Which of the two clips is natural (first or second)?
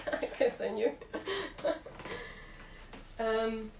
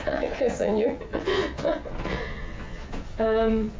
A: first